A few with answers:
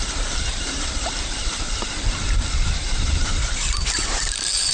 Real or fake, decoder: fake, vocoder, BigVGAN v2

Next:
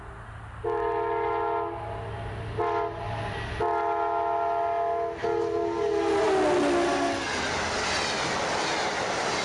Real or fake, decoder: real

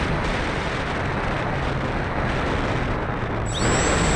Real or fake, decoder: real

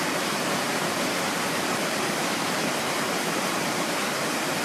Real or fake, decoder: fake, vocoder, BigVGAN v2